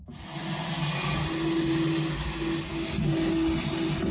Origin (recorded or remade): recorded